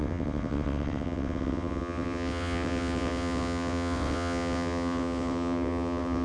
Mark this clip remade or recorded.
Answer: remade